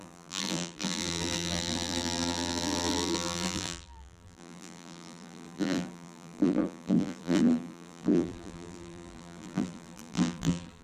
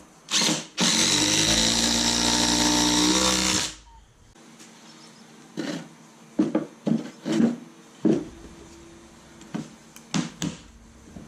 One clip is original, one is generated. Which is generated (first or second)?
first